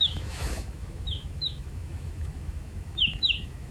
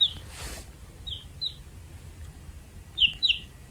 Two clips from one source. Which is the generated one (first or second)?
first